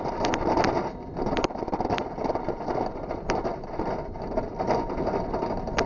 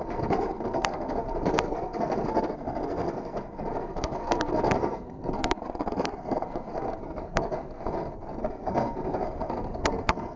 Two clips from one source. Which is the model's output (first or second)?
second